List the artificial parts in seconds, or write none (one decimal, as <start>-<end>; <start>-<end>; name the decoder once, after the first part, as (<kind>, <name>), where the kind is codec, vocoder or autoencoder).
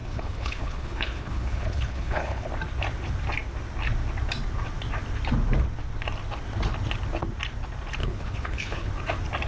0.0-2.5 (codec, HILCodec); 8.0-8.9